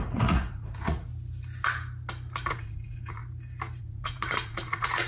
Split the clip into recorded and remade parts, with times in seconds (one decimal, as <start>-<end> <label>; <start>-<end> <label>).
0.0-1.1 remade; 1.1-2.5 recorded; 2.5-3.2 remade; 3.2-3.8 recorded; 3.8-5.1 remade